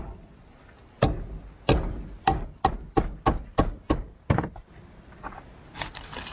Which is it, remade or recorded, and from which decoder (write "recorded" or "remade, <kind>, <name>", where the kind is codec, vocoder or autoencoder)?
recorded